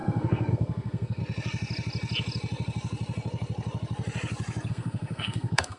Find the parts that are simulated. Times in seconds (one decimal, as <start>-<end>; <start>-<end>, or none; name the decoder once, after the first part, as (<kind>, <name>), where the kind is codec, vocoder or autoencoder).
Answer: 0.0-1.2 (codec, SNAC); 4.7-5.8